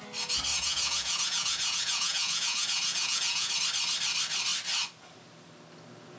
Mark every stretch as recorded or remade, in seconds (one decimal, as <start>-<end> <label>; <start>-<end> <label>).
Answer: 0.0-0.5 recorded; 0.5-3.5 remade; 3.5-6.2 recorded